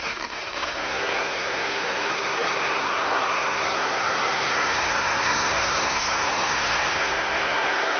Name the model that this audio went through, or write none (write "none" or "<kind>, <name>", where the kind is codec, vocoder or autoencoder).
codec, SNAC